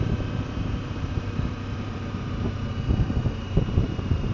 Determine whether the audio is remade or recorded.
remade